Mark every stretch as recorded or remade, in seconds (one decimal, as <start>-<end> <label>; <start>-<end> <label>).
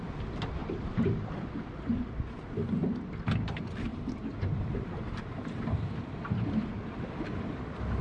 0.0-0.6 recorded; 0.6-1.1 remade; 1.1-3.9 recorded; 3.9-5.8 remade; 5.8-8.0 recorded